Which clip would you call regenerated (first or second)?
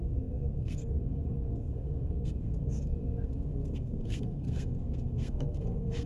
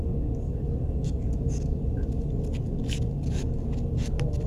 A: first